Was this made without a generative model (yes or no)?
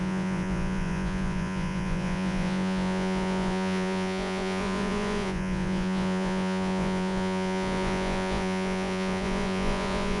no